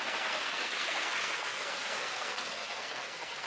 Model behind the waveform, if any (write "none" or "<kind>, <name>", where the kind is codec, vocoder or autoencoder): codec, SNAC